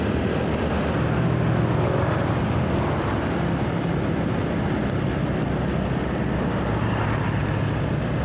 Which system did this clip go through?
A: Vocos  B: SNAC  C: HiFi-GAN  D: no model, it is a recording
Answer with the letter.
D